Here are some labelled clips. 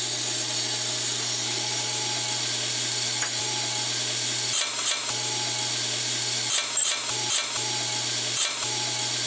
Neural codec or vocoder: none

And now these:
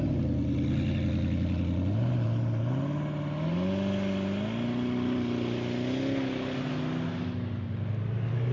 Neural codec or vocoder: none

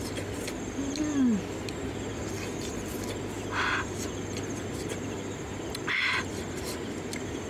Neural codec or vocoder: none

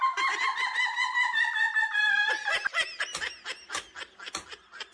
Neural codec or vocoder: none